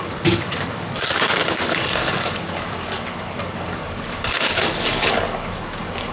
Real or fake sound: fake